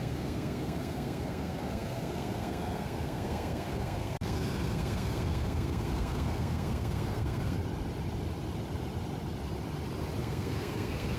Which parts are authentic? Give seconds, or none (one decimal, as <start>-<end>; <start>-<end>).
7.6-10.2